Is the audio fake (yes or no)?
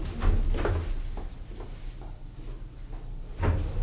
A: no